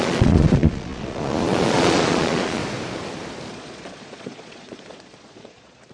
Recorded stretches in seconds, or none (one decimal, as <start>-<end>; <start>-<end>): 2.6-3.5